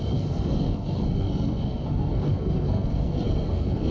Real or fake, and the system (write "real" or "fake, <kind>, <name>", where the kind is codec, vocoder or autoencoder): fake, codec, SNAC